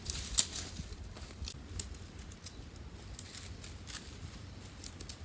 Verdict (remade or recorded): recorded